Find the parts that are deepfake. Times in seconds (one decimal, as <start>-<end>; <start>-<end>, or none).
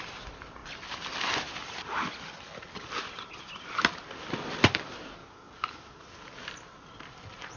5.2-6.0